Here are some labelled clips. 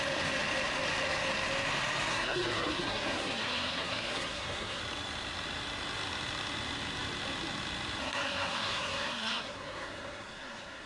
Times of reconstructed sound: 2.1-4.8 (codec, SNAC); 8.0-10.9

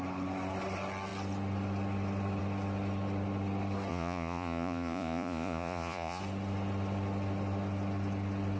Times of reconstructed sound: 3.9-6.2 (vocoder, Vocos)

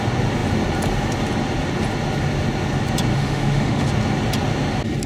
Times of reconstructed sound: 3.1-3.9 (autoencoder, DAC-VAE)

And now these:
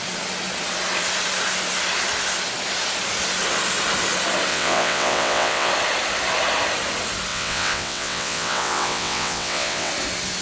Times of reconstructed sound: 4.5-5.7 (vocoder, WaveNeXt); 7.3-9.9

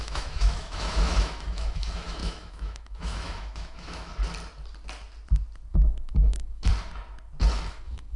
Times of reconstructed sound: 0.0-4.1 (autoencoder, DAC-VAE); 5.7-6.7; 7.7-8.2

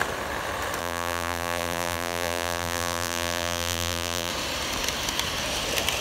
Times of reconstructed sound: 0.8-4.3 (vocoder, BigVGAN v2)

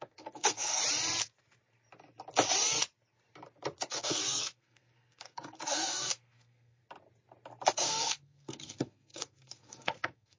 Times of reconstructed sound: 0.0-0.8 (codec, SNAC); 3.9-6.8; 7.7-10.4